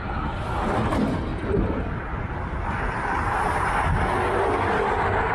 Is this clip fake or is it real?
real